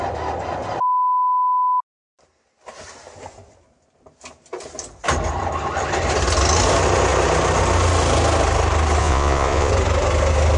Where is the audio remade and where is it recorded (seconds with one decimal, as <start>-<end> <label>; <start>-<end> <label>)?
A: 0.0-9.0 recorded; 9.0-9.7 remade; 9.7-10.6 recorded